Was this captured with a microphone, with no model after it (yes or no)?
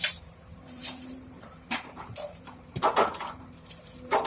no